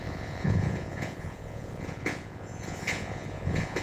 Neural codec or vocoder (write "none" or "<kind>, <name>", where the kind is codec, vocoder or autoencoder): vocoder, Vocos